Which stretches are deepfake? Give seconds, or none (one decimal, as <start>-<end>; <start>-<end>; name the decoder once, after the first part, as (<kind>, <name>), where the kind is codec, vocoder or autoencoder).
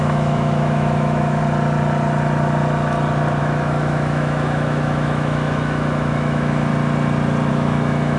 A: 0.0-1.4 (autoencoder, DAC-VAE); 3.4-6.7; 7.5-8.2